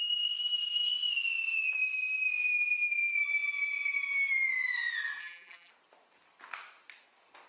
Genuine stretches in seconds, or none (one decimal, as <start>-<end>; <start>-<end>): 0.0-5.2; 5.7-7.5